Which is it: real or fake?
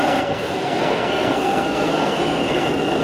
fake